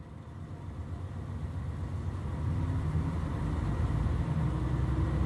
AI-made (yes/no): no